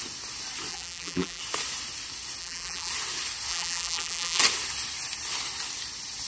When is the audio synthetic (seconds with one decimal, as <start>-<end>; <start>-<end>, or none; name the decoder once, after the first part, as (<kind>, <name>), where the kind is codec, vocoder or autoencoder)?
0.7-1.4 (vocoder, BigVGAN v2); 2.4-2.9; 3.5-4.4